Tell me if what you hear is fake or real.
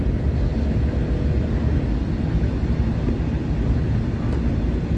real